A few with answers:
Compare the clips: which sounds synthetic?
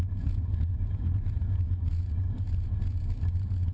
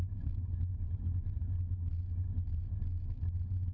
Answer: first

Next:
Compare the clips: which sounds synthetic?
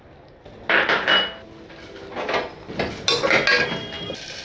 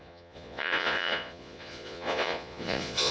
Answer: second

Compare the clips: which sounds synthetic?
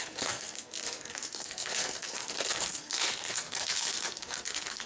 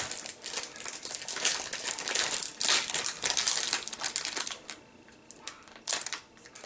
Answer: first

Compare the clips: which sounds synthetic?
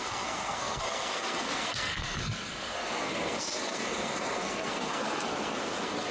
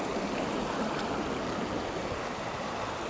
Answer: first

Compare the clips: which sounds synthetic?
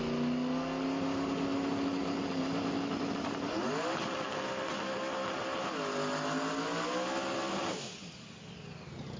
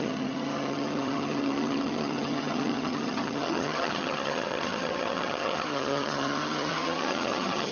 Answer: second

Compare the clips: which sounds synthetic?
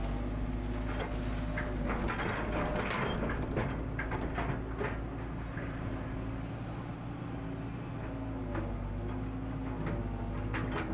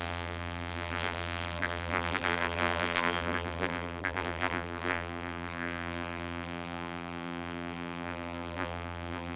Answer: second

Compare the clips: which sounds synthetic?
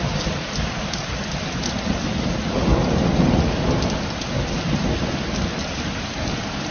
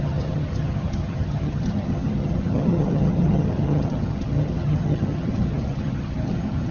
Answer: second